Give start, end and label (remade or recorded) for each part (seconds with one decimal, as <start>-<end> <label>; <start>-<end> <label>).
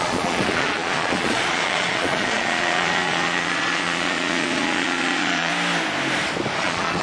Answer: 0.0-5.5 remade; 5.5-6.6 recorded; 6.6-7.0 remade